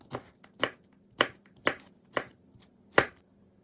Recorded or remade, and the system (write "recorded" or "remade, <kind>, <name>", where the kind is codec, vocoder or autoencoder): recorded